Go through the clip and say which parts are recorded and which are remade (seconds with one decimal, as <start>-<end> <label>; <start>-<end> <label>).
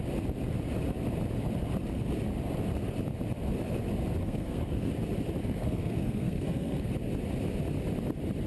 0.0-4.2 recorded; 4.2-4.9 remade; 4.9-5.4 recorded; 5.4-6.9 remade; 6.9-8.5 recorded